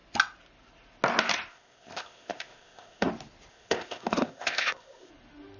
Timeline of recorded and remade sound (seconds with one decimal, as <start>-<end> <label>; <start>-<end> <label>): 0.0-1.5 recorded; 1.5-3.1 remade; 3.1-3.5 recorded; 3.5-5.1 remade; 5.1-5.6 recorded

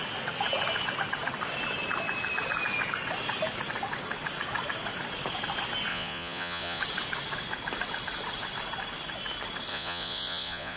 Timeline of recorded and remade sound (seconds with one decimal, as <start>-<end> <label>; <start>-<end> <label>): 0.0-5.9 recorded; 5.9-6.8 remade; 6.8-9.7 recorded; 9.7-10.8 remade

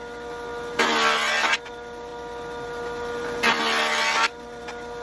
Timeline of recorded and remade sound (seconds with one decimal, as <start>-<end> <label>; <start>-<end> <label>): 0.0-5.0 recorded

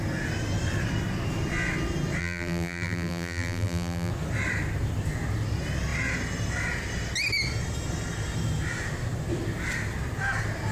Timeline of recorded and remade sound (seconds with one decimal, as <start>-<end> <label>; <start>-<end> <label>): 0.0-2.2 recorded; 2.2-4.1 remade; 4.1-10.7 recorded

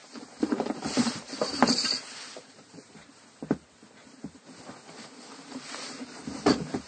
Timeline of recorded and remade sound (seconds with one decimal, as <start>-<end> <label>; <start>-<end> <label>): 0.0-2.9 remade; 2.9-4.0 recorded; 4.0-6.9 remade

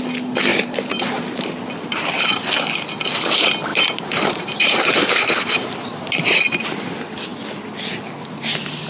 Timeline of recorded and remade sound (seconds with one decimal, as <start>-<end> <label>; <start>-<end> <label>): 0.0-0.5 recorded; 0.5-2.4 remade; 2.4-3.7 recorded; 3.7-6.4 remade; 6.4-8.9 recorded

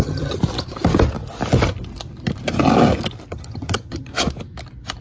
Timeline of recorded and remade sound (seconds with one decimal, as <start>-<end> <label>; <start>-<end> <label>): 0.0-0.4 remade; 0.4-3.3 recorded; 3.3-4.1 remade; 4.1-5.0 recorded

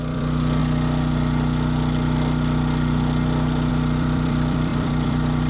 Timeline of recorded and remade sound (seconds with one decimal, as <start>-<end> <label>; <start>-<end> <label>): 0.0-0.6 remade; 0.6-3.7 recorded; 3.7-5.5 remade